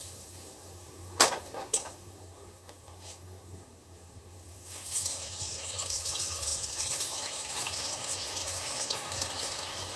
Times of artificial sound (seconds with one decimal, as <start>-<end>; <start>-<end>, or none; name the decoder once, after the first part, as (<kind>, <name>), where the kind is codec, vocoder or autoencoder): 0.0-10.0 (codec, SNAC)